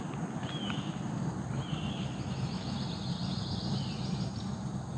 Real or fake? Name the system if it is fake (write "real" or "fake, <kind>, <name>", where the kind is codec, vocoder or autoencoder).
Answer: real